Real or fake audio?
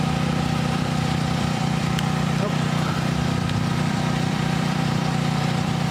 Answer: fake